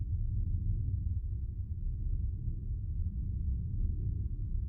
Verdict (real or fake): real